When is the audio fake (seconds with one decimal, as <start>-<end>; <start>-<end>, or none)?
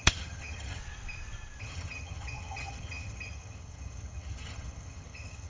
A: 0.0-0.8; 1.6-5.5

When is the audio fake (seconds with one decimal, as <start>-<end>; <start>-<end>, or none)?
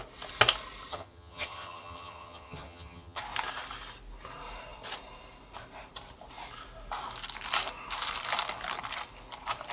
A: 0.9-3.2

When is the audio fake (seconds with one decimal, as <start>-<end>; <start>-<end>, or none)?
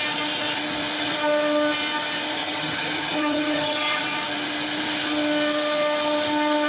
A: 2.4-4.0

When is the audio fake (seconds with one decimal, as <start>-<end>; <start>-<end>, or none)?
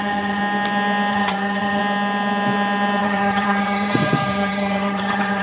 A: 0.0-0.4; 1.1-1.8; 3.0-5.4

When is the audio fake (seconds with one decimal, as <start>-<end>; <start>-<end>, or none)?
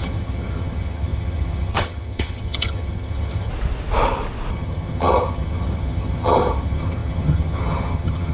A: 0.0-3.5; 4.5-8.3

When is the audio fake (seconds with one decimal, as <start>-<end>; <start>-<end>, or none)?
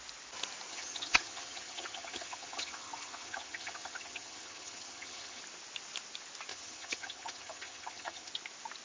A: 0.7-5.4; 6.5-8.3